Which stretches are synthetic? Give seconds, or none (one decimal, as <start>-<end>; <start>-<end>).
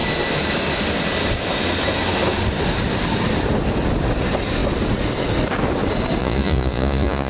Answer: 6.2-7.3